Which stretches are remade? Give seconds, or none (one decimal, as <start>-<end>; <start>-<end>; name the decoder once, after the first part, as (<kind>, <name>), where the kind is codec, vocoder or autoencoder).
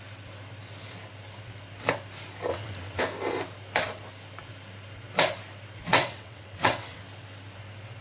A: 2.5-3.0 (vocoder, WaveNeXt); 5.9-7.0